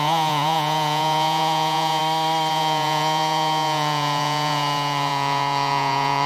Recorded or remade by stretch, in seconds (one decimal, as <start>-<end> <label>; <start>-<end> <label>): 0.0-2.0 remade; 2.0-2.5 recorded; 2.5-6.3 remade